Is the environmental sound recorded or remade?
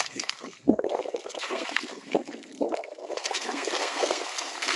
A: remade